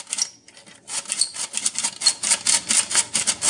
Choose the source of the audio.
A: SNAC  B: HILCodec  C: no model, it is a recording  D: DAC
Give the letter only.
C